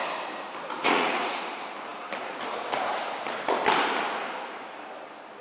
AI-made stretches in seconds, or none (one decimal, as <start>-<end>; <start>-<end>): 0.8-1.5